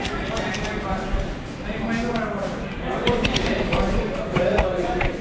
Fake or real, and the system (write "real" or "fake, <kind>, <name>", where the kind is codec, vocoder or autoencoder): real